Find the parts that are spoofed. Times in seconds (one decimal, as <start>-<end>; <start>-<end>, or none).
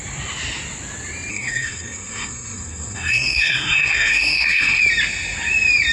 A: 1.3-4.8